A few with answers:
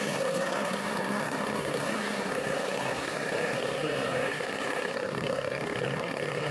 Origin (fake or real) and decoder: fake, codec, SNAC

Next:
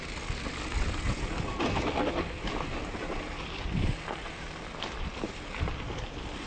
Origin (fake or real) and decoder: real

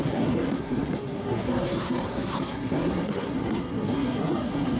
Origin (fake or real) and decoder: fake, codec, SNAC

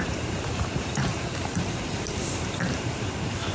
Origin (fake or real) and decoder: fake, vocoder, BigVGAN v2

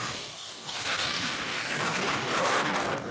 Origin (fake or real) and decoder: fake, codec, DAC